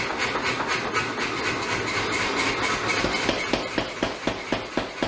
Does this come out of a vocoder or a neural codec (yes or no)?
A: no